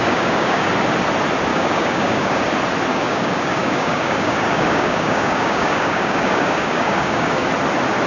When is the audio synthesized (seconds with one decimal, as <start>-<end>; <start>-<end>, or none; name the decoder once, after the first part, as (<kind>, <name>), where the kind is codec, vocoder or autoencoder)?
0.0-0.7 (codec, DAC); 1.5-2.4; 2.9-7.5